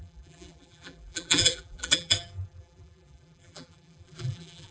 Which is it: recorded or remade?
remade